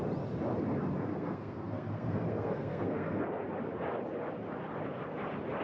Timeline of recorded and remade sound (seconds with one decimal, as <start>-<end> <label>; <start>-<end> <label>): 0.0-1.1 recorded; 1.1-3.2 remade; 3.2-5.6 recorded